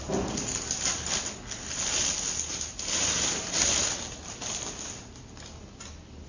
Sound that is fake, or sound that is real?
real